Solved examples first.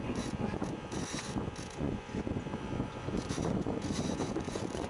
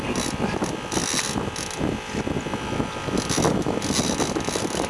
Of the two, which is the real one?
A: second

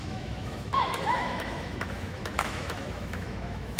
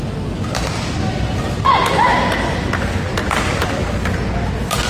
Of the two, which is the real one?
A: second